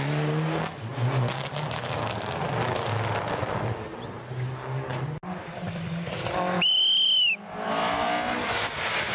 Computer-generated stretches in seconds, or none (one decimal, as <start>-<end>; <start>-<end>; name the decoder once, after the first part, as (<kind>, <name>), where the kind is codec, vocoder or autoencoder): none